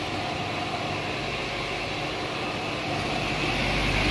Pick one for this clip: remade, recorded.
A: recorded